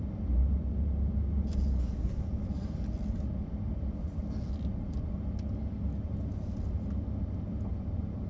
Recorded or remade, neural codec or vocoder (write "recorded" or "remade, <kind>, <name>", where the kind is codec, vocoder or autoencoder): recorded